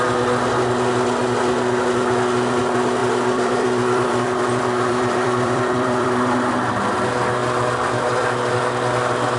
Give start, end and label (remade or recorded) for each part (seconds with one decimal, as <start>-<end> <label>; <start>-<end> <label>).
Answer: 0.0-3.0 recorded; 3.0-6.3 remade; 6.3-7.4 recorded; 7.4-8.5 remade; 8.5-9.4 recorded